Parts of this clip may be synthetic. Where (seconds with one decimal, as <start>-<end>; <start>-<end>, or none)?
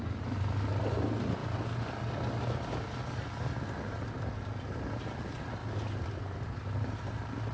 none